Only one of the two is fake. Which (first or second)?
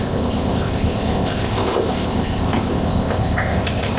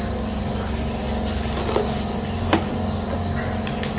first